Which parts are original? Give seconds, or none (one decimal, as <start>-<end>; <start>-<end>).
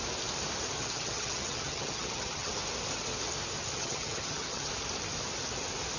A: 0.0-0.8; 2.5-3.7; 4.7-6.0